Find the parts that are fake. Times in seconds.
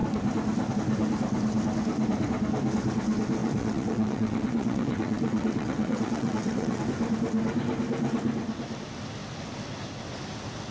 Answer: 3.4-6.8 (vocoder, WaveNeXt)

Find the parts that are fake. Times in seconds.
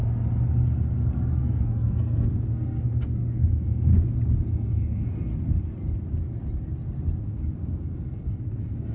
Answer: 1.4-3.9 (codec, SNAC); 4.5-5.3; 7.2-8.9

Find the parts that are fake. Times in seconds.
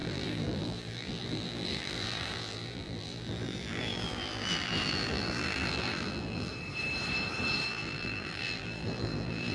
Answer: 0.0-6.5 (vocoder, BigVGAN v2); 7.7-9.5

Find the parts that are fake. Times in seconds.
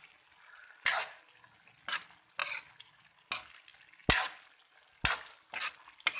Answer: none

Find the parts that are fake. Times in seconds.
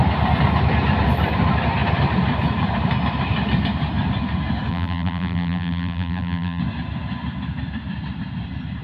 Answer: 4.7-6.6 (vocoder, BigVGAN v2)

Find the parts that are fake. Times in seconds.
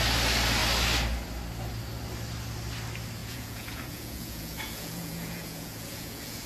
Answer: 3.2-6.5 (vocoder, Vocos)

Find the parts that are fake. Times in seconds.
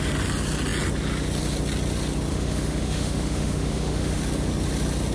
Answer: 2.3-4.2 (autoencoder, DAC-VAE)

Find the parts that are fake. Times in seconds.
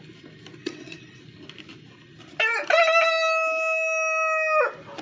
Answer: 0.6-1.2 (vocoder, WaveNeXt)